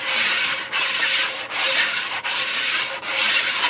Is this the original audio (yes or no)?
no